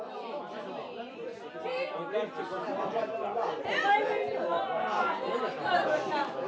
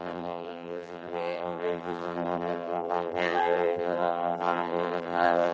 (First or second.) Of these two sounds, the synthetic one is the second